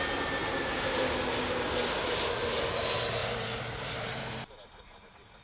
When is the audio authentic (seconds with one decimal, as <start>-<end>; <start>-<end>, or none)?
0.0-0.4; 1.1-3.2